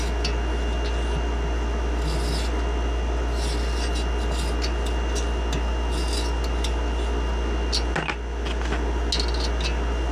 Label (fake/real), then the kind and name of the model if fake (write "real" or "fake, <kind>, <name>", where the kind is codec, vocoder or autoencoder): real